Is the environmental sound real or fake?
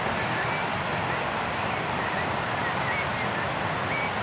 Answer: real